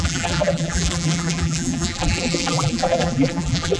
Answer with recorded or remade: remade